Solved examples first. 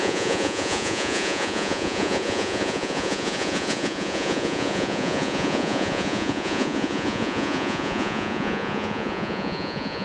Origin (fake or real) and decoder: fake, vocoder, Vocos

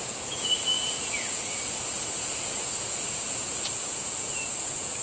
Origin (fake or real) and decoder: fake, vocoder, Vocos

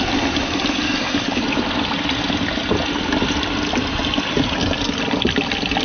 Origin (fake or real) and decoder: real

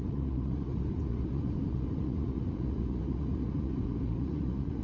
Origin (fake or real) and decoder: fake, vocoder, Vocos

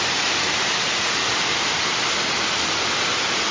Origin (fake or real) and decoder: real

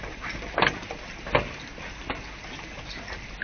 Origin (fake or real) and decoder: real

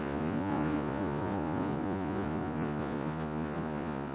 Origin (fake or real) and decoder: fake, vocoder, Vocos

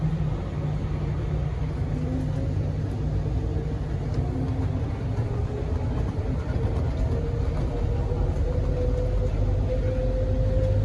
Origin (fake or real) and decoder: real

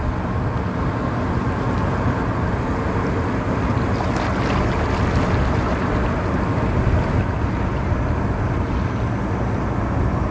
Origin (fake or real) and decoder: real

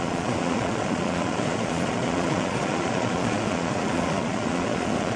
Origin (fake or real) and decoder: fake, vocoder, Vocos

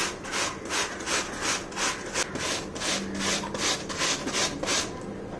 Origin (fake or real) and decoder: real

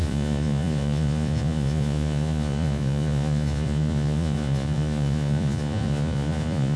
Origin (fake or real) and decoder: fake, vocoder, Vocos